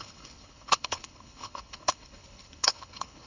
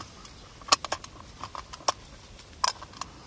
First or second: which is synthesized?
first